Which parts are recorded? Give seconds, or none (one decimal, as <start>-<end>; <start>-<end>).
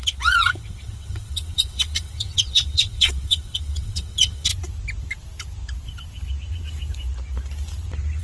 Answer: 4.5-8.2